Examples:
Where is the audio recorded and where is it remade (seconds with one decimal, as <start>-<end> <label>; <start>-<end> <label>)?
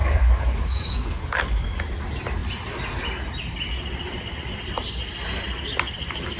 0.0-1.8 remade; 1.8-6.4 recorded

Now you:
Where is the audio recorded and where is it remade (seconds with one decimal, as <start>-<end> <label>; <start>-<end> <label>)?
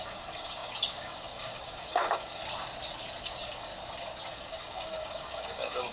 0.0-2.4 remade; 2.4-3.2 recorded; 3.2-3.7 remade; 3.7-4.3 recorded; 4.3-5.9 remade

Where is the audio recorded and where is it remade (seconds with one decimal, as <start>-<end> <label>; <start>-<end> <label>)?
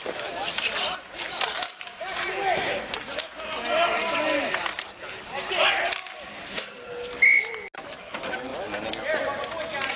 0.0-10.0 recorded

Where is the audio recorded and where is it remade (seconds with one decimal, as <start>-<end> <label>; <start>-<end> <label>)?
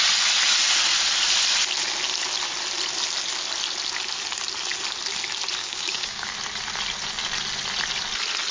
0.0-5.6 recorded; 5.6-6.3 remade; 6.3-8.5 recorded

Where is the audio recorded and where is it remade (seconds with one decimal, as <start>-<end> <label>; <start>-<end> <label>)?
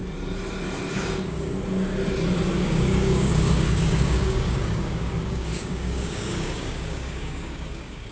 0.0-0.9 recorded; 0.9-1.5 remade; 1.5-2.6 recorded; 2.6-8.1 remade